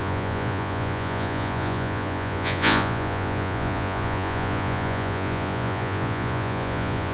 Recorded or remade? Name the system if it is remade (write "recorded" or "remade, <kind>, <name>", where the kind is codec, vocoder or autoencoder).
remade, vocoder, Vocos